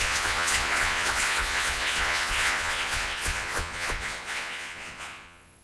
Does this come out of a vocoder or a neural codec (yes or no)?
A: yes